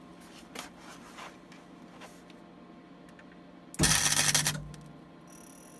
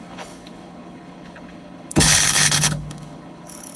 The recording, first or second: first